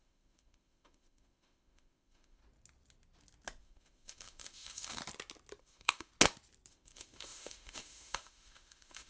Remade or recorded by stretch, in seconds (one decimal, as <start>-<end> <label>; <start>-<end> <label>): 0.0-2.4 remade; 2.4-3.6 recorded; 3.6-5.0 remade; 5.0-5.6 recorded; 5.6-6.1 remade; 6.1-6.7 recorded; 6.7-9.1 remade